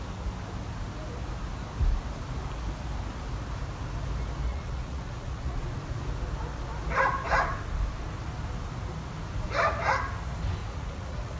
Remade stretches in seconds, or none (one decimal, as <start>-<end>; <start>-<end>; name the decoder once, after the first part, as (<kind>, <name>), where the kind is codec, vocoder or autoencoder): 4.5-5.6 (vocoder, Vocos); 10.6-11.4

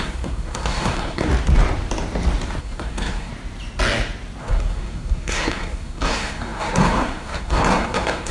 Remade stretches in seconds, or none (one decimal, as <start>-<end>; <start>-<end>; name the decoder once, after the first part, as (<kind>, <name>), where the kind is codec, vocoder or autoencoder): 0.0-1.3 (codec, SNAC); 2.6-3.3; 4.4-8.3

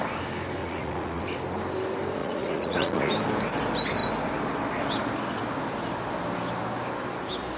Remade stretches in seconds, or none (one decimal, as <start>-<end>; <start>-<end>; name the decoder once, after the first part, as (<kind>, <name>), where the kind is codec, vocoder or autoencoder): 0.6-1.2 (vocoder, Vocos); 2.2-3.1

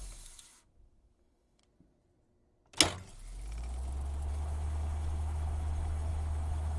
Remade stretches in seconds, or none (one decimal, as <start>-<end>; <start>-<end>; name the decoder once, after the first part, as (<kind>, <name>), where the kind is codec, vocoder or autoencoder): 0.0-1.6 (autoencoder, DAC-VAE); 4.3-6.8